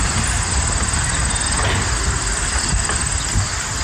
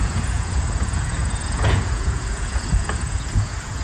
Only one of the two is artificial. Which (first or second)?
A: second